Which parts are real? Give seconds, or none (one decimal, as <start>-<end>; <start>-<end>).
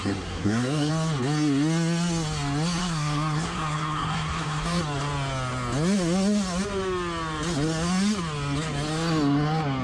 0.9-2.8; 4.8-9.8